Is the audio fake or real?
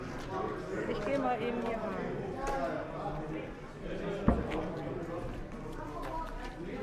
real